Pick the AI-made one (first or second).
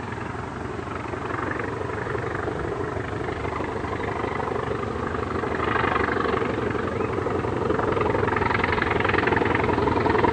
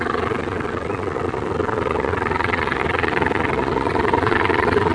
second